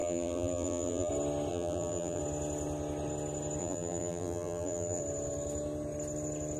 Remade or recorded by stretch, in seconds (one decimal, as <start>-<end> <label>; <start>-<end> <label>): 0.0-1.1 remade; 1.1-1.5 recorded; 1.5-2.2 remade; 2.2-3.6 recorded; 3.6-5.0 remade; 5.0-6.6 recorded